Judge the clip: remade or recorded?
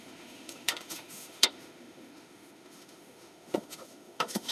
remade